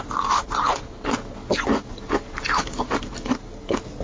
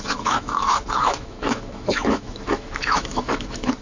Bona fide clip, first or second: first